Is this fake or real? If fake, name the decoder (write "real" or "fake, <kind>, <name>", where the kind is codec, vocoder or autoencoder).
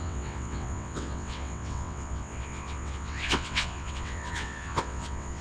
fake, vocoder, WaveNeXt